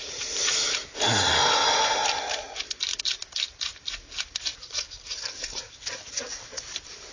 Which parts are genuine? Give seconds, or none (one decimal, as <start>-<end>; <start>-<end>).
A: 0.0-7.1